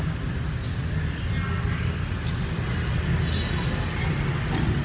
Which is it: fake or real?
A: real